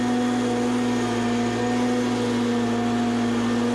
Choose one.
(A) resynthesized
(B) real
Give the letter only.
B